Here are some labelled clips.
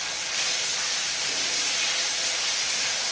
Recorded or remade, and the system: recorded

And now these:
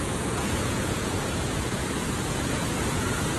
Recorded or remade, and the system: remade, vocoder, Vocos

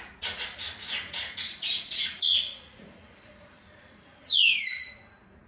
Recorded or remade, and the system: remade, vocoder, Vocos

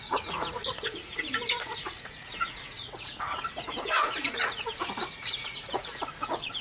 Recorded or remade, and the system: remade, vocoder, Vocos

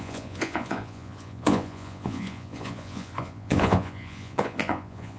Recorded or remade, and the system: remade, vocoder, Vocos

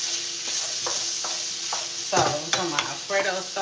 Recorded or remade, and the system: recorded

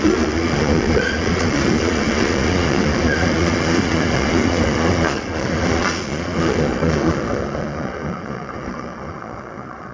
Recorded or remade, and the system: remade, vocoder, Vocos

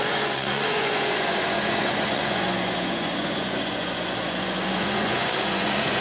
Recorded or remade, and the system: remade, vocoder, Vocos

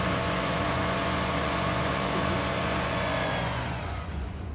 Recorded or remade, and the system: remade, vocoder, Vocos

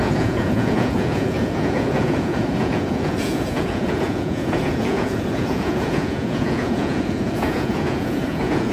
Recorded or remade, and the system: remade, vocoder, Vocos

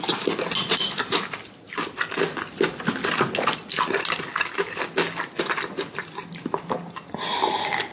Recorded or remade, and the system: recorded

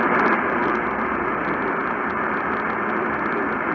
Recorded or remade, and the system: recorded